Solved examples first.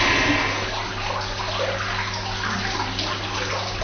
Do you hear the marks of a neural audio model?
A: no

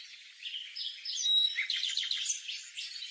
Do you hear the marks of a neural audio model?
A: no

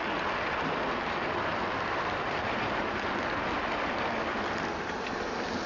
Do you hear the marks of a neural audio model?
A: no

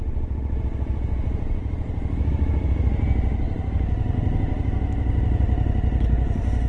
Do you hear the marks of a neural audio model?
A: no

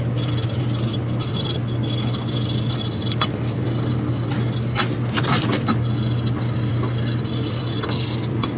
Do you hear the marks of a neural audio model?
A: no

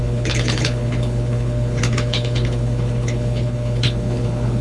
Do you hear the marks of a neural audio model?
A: yes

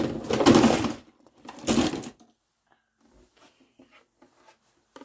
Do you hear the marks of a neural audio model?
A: no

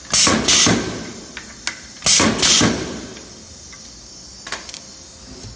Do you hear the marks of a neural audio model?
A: no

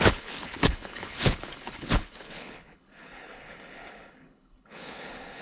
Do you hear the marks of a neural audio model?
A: yes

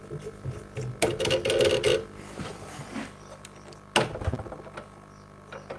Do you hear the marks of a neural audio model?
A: no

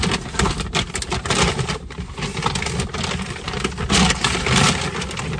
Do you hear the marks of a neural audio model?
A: no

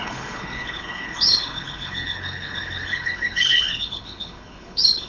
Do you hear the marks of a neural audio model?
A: yes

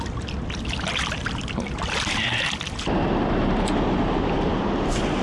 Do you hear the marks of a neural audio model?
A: no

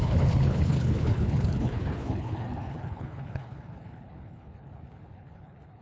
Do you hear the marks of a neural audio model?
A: yes